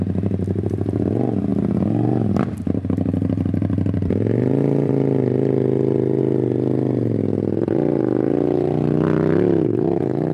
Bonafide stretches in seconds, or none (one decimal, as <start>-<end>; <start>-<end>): 0.0-10.3